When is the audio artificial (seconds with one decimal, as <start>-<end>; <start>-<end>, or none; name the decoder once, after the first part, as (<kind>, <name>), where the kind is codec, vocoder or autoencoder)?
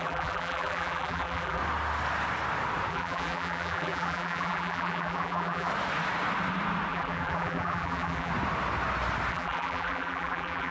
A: 0.0-1.6 (vocoder, BigVGAN v2); 2.9-5.7; 6.9-8.3; 9.3-10.7